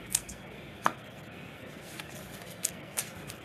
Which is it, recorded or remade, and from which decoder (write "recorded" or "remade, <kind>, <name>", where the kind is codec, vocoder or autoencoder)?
remade, codec, SNAC